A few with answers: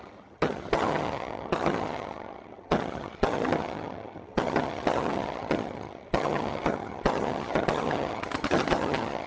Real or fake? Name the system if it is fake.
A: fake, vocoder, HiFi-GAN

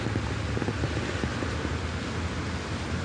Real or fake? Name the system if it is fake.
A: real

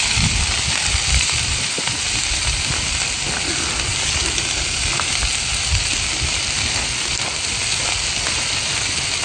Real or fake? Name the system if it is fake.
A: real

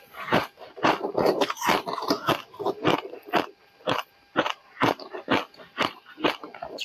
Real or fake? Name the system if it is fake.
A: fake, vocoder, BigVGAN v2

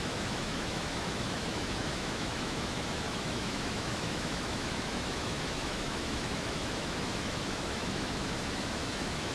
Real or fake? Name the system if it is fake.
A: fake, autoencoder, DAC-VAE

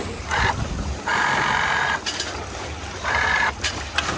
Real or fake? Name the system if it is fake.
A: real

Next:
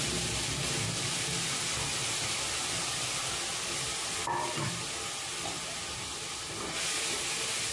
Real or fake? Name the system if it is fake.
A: real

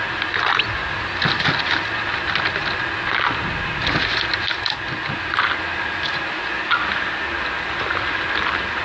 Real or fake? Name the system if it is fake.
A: real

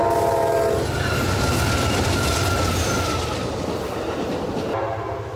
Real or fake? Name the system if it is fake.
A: real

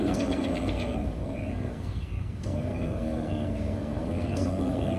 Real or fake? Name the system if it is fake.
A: fake, codec, SNAC